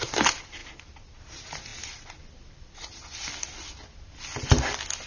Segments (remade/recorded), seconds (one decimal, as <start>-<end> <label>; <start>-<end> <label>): 0.0-5.1 recorded